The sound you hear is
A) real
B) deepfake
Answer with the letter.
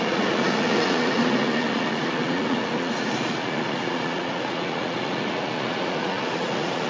B